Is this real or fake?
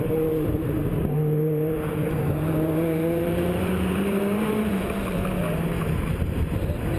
fake